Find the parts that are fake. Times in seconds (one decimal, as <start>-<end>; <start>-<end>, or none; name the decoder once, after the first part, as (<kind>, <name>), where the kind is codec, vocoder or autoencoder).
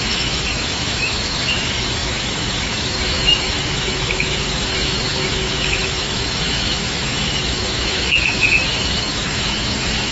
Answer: 0.0-10.1 (autoencoder, DAC-VAE)